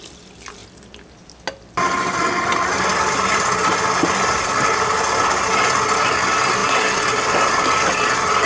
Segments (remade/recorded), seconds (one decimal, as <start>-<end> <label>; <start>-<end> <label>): 0.0-8.4 recorded